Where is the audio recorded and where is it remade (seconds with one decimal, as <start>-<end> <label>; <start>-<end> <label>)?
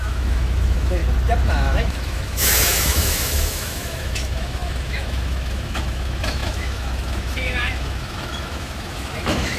0.0-1.0 remade; 1.0-1.5 recorded; 1.5-9.6 remade